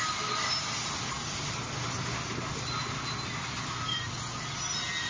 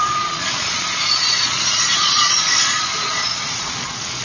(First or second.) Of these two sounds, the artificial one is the second